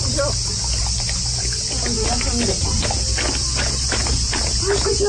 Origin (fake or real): real